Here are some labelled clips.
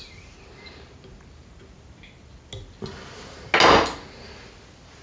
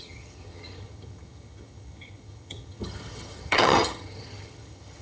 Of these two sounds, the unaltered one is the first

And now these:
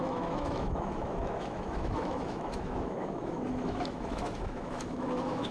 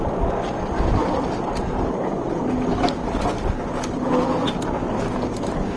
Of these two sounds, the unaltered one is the second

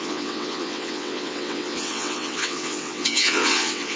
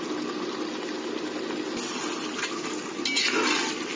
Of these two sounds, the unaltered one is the second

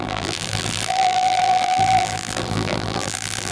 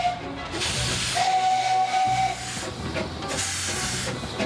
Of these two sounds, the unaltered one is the second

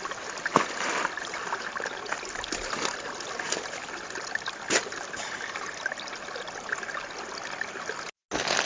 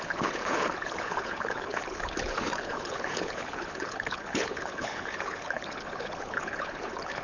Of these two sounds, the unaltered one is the first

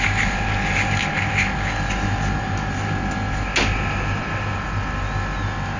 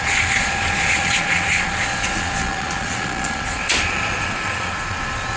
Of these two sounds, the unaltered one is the first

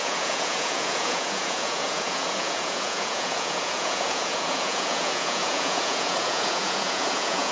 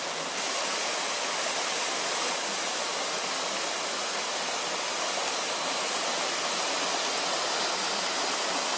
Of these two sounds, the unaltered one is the second